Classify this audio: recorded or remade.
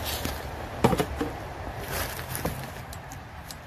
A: recorded